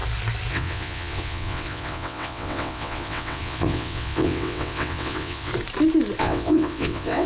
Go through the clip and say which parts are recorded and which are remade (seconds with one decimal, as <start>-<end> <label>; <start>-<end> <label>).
0.0-0.5 recorded; 0.5-5.5 remade; 5.5-6.2 recorded; 6.2-7.3 remade